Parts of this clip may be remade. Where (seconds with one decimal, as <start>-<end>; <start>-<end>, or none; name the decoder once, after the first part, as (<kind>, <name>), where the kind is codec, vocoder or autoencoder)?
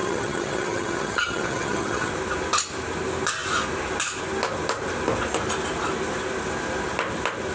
0.0-2.1 (vocoder, HiFi-GAN)